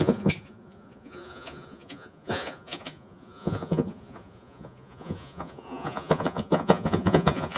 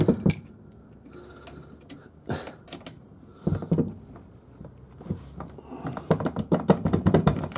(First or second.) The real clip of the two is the second